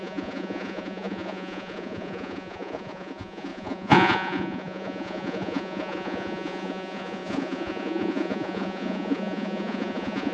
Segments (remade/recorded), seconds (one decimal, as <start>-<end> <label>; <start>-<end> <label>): 0.0-10.3 remade